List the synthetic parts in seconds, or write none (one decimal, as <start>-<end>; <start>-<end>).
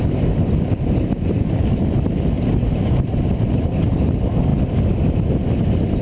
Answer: none